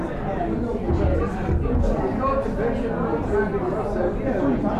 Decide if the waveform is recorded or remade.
recorded